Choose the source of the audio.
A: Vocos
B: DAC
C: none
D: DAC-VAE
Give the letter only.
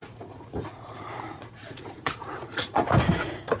A